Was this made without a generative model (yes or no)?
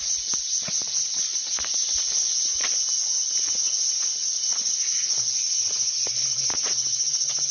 yes